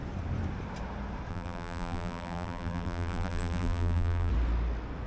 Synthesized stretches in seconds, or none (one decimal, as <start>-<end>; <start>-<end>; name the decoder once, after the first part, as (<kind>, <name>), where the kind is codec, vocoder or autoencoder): 1.3-4.3 (vocoder, BigVGAN v2)